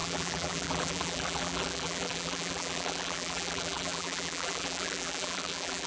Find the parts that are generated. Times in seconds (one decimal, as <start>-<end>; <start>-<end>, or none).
0.0-5.9